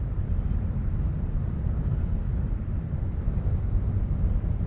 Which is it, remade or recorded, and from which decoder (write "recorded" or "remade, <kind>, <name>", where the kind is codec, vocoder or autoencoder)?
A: recorded